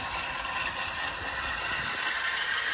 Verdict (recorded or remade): remade